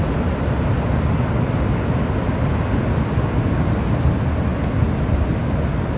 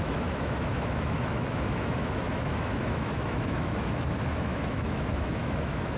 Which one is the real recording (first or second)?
first